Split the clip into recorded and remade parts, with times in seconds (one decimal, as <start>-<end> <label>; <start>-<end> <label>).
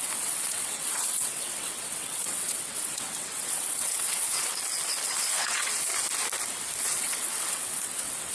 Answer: 0.0-4.5 remade; 4.5-5.1 recorded; 5.1-5.9 remade; 5.9-6.8 recorded; 6.8-8.3 remade